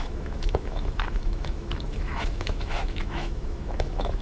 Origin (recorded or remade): remade